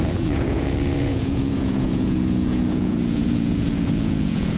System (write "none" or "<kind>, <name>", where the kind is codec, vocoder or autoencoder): vocoder, Vocos